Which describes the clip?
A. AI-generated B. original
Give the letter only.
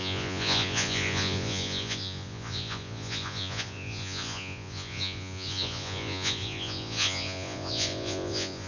A